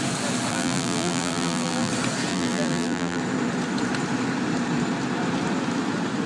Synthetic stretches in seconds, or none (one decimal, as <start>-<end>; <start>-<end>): 0.5-1.9; 2.3-3.2

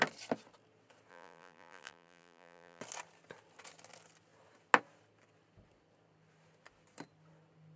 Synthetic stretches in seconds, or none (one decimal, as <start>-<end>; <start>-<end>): 1.1-2.8

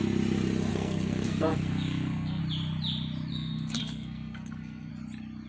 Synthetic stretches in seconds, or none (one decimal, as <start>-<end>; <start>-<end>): 0.7-2.4; 3.3-4.9

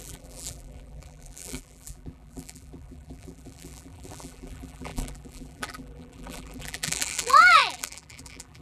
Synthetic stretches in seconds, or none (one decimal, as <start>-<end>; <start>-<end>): 0.0-8.6

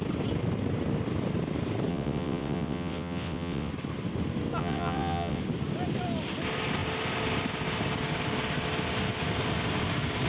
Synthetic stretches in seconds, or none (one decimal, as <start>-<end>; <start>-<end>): 1.9-3.7; 4.6-5.4

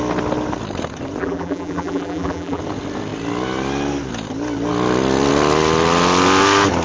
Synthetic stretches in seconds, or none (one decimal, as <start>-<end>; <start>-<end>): 1.2-2.6

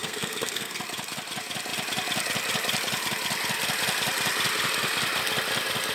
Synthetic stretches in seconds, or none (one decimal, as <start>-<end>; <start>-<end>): 0.0-0.8